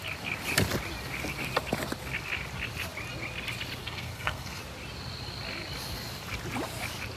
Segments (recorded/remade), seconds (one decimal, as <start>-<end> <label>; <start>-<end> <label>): 0.0-3.8 recorded; 3.8-4.6 remade; 4.6-7.2 recorded